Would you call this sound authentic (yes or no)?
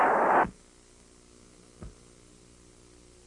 yes